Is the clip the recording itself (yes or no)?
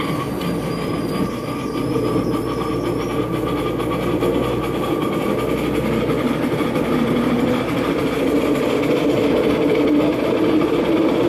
yes